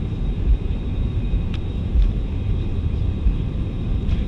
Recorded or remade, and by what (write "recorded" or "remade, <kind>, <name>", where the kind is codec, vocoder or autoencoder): remade, vocoder, BigVGAN v2